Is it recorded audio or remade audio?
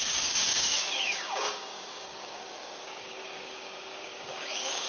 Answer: remade